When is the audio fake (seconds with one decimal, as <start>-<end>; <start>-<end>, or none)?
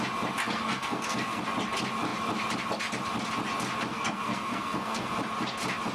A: 0.4-1.4; 3.9-5.1